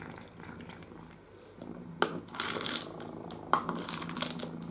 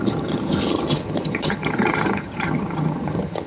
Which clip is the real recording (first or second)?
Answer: first